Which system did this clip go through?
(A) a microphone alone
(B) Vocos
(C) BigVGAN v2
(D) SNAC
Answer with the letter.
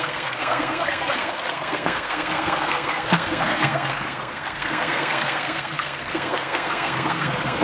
D